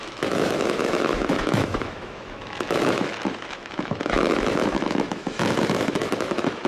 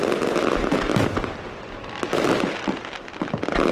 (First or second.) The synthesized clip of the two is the first